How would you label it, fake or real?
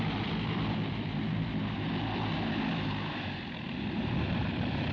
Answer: fake